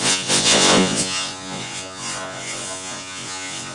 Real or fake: fake